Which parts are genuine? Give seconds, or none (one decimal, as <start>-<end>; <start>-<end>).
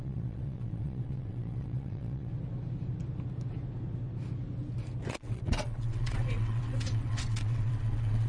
2.3-5.1